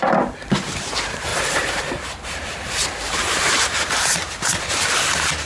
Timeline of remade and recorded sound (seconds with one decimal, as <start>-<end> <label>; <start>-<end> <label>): 0.0-1.3 recorded; 1.3-4.6 remade; 4.6-5.5 recorded